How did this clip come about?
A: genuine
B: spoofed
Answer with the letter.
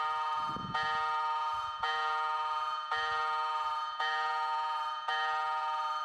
B